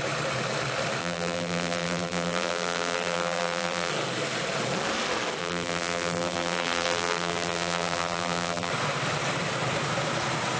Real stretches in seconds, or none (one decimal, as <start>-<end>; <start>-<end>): 0.0-1.0; 3.9-5.4; 8.7-10.6